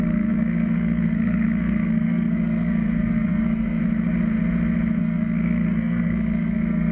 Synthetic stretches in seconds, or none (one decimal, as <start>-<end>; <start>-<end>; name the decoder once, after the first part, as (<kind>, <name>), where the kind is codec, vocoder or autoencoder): 0.0-3.8 (codec, SNAC); 5.0-6.9